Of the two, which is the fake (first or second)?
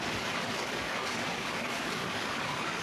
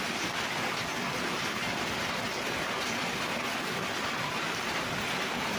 first